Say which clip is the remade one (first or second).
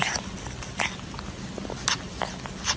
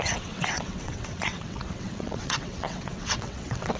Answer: second